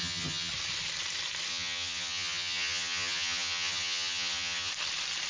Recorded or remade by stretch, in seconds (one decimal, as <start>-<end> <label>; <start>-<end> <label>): 0.0-0.5 remade; 0.5-1.5 recorded; 1.5-4.7 remade; 4.7-5.3 recorded